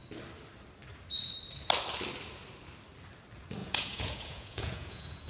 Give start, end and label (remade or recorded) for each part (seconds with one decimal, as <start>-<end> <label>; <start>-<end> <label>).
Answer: 0.0-3.6 recorded; 3.6-5.3 remade